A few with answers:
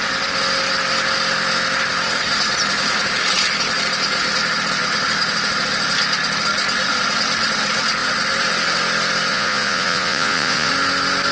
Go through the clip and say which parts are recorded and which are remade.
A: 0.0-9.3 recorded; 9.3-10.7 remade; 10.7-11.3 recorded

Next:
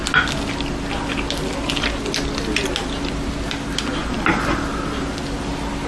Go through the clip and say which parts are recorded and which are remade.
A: 0.0-5.9 recorded

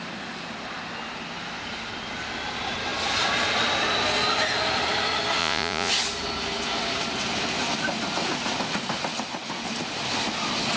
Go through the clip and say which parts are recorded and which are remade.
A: 0.0-5.4 recorded; 5.4-5.9 remade; 5.9-10.8 recorded

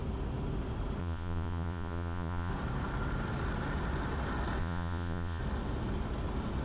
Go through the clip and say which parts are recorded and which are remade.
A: 0.0-1.0 recorded; 1.0-2.5 remade; 2.5-4.6 recorded; 4.6-5.4 remade; 5.4-6.6 recorded